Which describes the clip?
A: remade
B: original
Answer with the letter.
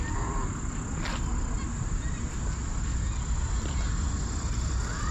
B